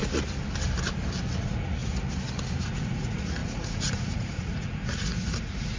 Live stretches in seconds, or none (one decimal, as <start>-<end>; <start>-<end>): 0.0-1.4; 1.8-2.6